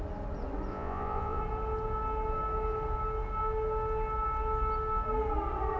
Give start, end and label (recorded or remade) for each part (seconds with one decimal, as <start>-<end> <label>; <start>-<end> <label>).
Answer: 0.0-0.7 recorded; 0.7-1.4 remade; 1.4-5.8 recorded